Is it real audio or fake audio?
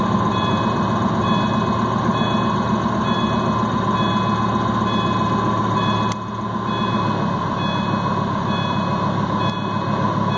real